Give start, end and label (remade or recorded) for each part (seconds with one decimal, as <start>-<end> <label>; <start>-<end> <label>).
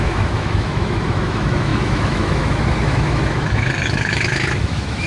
0.0-5.1 remade